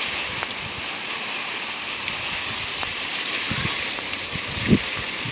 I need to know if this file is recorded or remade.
recorded